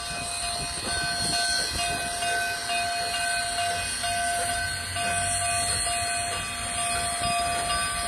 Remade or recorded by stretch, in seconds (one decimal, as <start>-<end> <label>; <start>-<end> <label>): 0.0-8.1 recorded